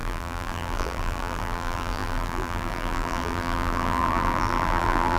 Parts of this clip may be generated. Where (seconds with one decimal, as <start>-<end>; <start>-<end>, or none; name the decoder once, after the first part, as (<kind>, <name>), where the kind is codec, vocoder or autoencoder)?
0.0-5.2 (vocoder, BigVGAN v2)